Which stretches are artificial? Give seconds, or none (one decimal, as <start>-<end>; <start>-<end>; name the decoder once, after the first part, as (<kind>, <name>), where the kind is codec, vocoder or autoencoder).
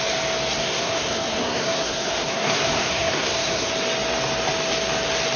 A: 0.5-3.7 (codec, SNAC)